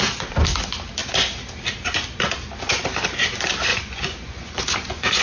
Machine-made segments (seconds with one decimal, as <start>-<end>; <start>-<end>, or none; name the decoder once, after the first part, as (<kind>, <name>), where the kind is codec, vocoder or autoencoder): 3.7-5.2 (vocoder, Vocos)